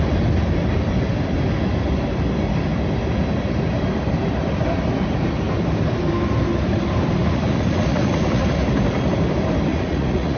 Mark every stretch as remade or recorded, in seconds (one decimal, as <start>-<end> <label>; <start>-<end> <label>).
0.0-7.2 recorded; 7.2-8.5 remade; 8.5-9.7 recorded; 9.7-10.4 remade